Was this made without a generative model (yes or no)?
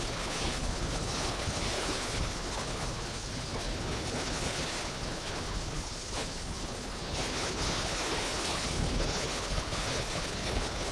no